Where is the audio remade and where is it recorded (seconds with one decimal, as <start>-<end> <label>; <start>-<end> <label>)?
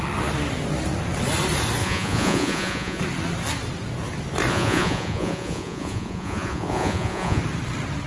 0.0-1.8 recorded; 1.8-3.0 remade; 3.0-4.5 recorded; 4.5-7.4 remade; 7.4-8.1 recorded